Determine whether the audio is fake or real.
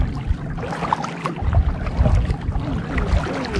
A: real